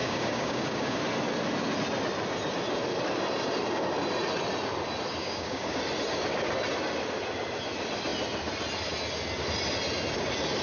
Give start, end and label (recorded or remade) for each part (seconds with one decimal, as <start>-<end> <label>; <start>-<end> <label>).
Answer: 0.0-1.0 remade; 1.0-5.2 recorded; 5.2-5.8 remade; 5.8-10.6 recorded